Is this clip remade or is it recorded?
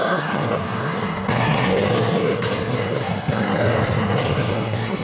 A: remade